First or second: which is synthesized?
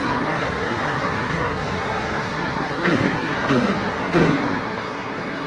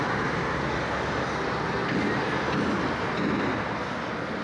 first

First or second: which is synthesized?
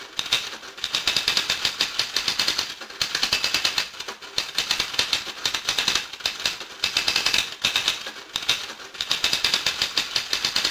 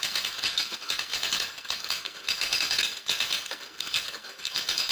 second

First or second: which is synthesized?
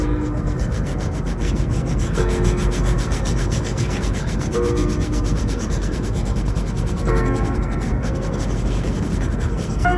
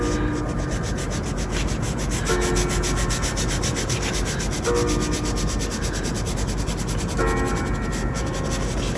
first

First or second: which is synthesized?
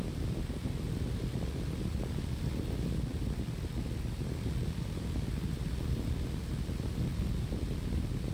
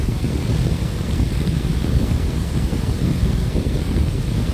second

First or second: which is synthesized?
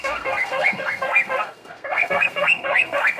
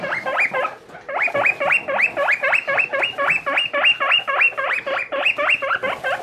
first